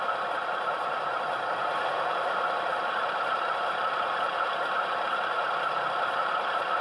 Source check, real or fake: fake